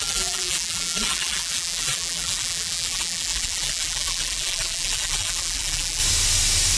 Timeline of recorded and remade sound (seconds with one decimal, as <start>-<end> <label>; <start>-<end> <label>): 0.0-6.0 remade; 6.0-6.8 recorded